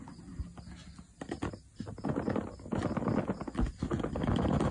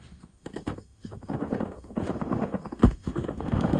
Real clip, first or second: first